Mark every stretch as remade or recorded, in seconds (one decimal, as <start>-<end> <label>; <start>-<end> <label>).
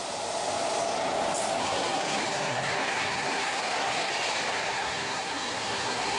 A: 0.0-1.6 recorded; 1.6-4.1 remade; 4.1-4.5 recorded; 4.5-6.2 remade